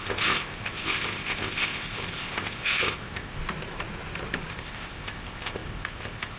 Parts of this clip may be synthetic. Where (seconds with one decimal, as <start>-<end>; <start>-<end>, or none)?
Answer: 0.0-3.4; 4.5-6.4